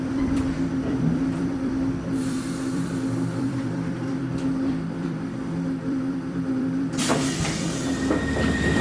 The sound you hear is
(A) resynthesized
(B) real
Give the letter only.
A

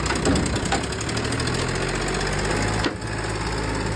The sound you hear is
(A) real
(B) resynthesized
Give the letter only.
A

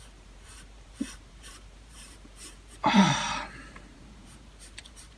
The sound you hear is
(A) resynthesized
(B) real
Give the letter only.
A